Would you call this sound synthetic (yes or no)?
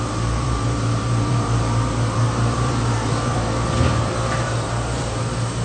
yes